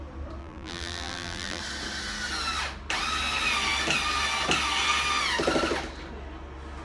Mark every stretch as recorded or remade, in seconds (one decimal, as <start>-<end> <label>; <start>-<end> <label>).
0.0-0.4 recorded; 0.4-1.6 remade; 1.6-6.8 recorded